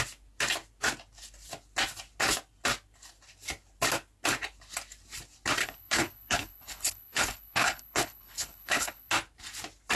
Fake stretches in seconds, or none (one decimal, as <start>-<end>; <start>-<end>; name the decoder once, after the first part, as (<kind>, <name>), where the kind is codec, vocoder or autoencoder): 5.6-9.1 (codec, HILCodec)